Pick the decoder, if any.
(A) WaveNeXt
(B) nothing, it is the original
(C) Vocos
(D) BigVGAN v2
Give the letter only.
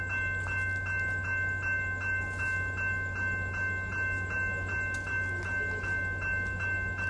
B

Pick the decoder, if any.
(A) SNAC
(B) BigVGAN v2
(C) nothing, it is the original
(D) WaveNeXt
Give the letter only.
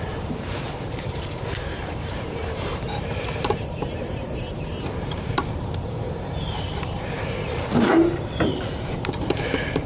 B